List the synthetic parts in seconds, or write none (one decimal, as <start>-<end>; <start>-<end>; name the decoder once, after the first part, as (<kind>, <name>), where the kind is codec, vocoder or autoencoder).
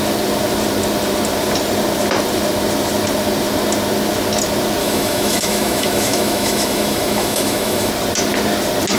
4.8-7.9 (autoencoder, DAC-VAE)